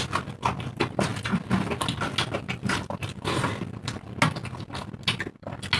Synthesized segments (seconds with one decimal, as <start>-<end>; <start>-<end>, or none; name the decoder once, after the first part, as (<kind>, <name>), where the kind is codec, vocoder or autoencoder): none